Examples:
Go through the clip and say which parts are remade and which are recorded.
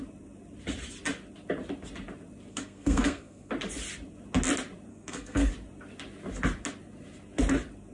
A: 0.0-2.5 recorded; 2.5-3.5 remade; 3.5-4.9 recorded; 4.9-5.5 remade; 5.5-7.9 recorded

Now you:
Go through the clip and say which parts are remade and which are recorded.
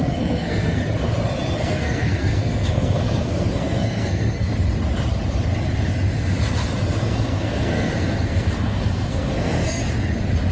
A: 0.0-0.8 remade; 0.8-1.6 recorded; 1.6-4.5 remade; 4.5-7.0 recorded; 7.0-9.8 remade; 9.8-10.5 recorded